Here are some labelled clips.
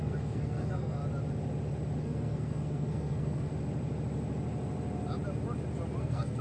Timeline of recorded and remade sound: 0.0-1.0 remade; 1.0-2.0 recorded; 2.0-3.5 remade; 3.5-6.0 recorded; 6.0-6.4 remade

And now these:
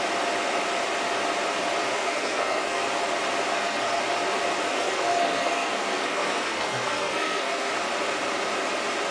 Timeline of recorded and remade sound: 0.0-1.9 recorded; 1.9-2.9 remade; 2.9-3.5 recorded; 3.5-4.0 remade; 4.0-4.7 recorded; 4.7-7.7 remade; 7.7-9.1 recorded

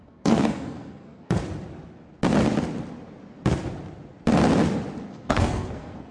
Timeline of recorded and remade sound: 0.0-1.4 remade; 1.4-5.1 recorded; 5.1-6.1 remade